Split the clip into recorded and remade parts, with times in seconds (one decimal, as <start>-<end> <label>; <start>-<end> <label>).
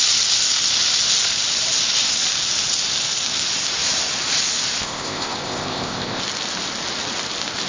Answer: 0.0-4.8 recorded; 4.8-6.2 remade; 6.2-7.7 recorded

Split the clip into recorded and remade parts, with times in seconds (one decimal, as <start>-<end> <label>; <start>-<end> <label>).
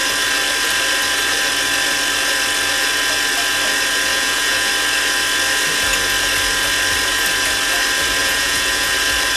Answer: 0.0-4.1 recorded; 4.1-4.7 remade; 4.7-8.2 recorded; 8.2-8.9 remade; 8.9-9.4 recorded